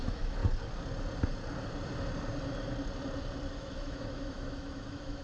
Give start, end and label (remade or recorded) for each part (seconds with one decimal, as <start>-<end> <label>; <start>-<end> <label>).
0.0-0.4 remade; 0.4-3.5 recorded; 3.5-5.2 remade